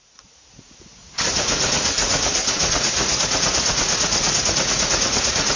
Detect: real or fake fake